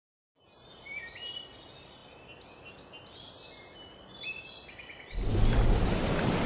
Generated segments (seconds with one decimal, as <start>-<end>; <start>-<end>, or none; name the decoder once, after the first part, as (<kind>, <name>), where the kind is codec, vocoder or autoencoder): none